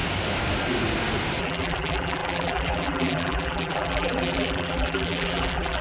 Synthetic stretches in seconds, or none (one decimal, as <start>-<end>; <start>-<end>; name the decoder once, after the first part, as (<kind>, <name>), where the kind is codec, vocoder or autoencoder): 1.4-5.8 (vocoder, BigVGAN v2)

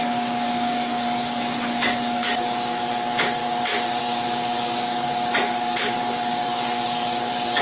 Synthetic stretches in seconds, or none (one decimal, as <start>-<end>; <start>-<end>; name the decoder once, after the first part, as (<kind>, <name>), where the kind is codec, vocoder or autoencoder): 0.0-3.4 (codec, DAC); 4.0-7.6

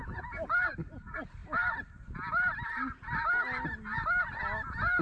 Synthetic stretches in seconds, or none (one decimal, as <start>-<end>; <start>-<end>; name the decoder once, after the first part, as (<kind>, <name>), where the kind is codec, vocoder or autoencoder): none